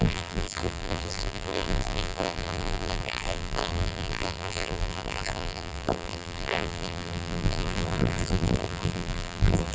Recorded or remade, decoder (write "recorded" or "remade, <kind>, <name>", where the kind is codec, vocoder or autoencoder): remade, vocoder, BigVGAN v2